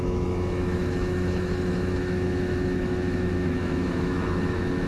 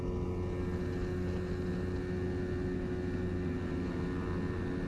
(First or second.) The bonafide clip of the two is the second